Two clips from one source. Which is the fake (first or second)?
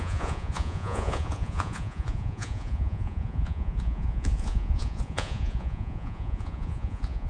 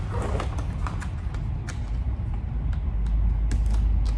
first